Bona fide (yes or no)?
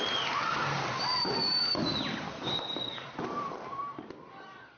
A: yes